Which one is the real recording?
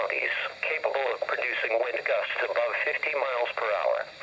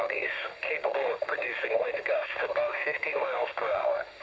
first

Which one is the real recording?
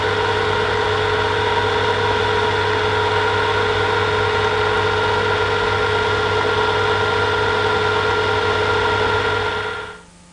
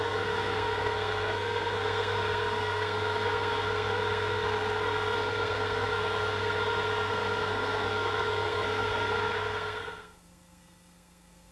first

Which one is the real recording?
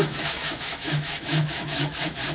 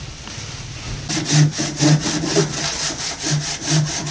second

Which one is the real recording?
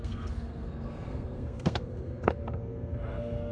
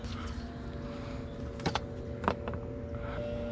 second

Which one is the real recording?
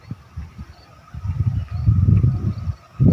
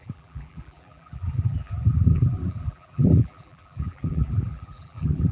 first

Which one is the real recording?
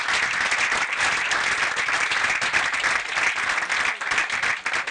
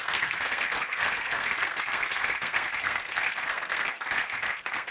first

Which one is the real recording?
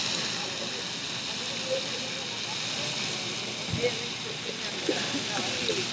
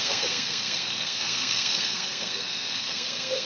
first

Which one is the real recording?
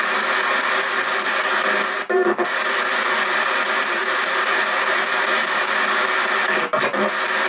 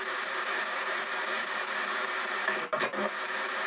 first